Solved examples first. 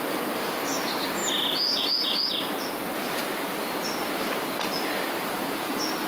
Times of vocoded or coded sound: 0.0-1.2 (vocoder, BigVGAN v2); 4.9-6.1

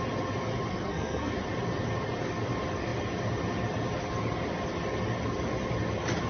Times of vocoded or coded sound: 0.7-1.3 (codec, SNAC)

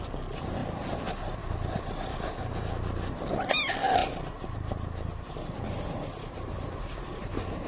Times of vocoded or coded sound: 2.1-2.7 (codec, DAC)

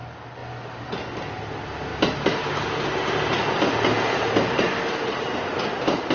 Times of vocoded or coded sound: none

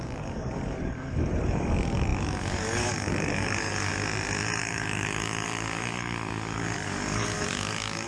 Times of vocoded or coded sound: 0.0-3.9 (codec, DAC); 4.6-8.1